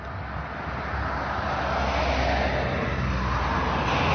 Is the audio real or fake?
real